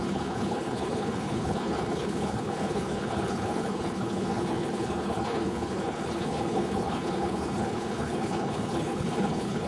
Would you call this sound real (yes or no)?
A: no